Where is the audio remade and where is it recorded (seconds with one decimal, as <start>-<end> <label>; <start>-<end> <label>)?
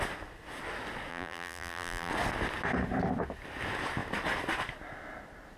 0.0-1.1 recorded; 1.1-2.1 remade; 2.1-5.6 recorded